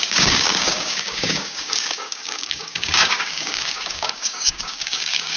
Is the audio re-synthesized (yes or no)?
yes